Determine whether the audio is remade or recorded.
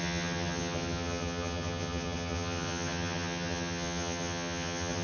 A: remade